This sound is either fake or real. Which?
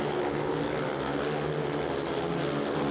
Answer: real